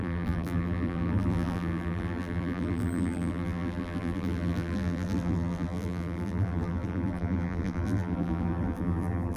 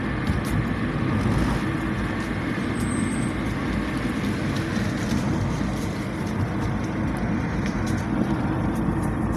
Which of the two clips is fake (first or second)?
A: first